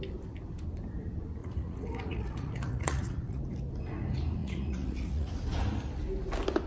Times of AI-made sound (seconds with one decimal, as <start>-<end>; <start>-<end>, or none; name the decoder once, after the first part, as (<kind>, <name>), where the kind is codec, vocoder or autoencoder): 1.4-3.4 (vocoder, Vocos); 4.4-5.3